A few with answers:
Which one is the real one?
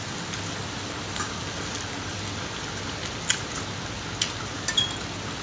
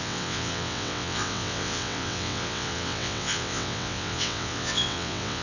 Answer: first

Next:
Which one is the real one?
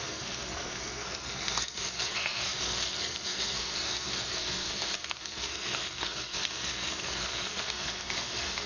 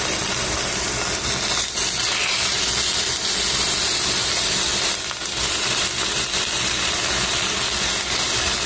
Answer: second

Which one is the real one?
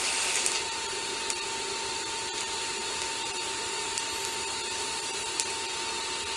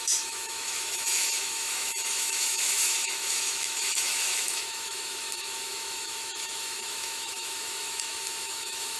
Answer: first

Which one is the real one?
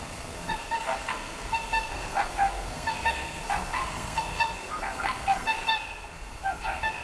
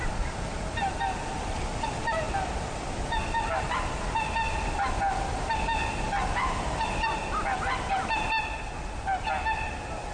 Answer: second